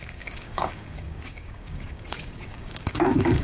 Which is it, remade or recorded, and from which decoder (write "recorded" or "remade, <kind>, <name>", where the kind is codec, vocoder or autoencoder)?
remade, codec, DAC